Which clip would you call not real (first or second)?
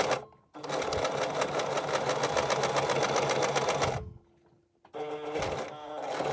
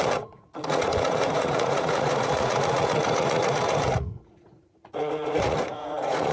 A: second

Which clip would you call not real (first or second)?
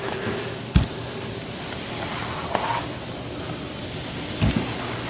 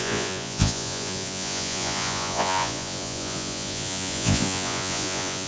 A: second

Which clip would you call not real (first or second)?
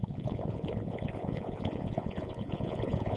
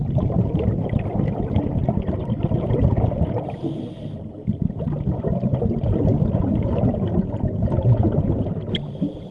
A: first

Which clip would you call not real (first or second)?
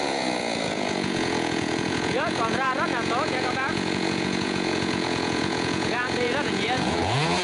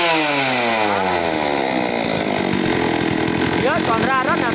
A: first